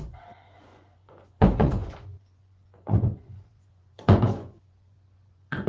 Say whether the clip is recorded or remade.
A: remade